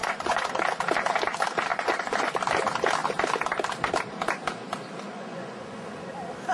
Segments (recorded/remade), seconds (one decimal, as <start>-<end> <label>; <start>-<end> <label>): 0.0-0.6 remade; 0.6-1.7 recorded; 1.7-2.3 remade; 2.3-5.1 recorded; 5.1-6.1 remade; 6.1-6.5 recorded